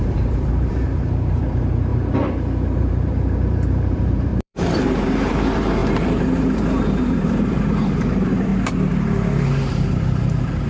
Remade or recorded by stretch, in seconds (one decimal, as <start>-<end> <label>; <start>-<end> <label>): 0.0-1.9 remade; 1.9-2.8 recorded; 2.8-8.5 remade; 8.5-9.7 recorded; 9.7-10.7 remade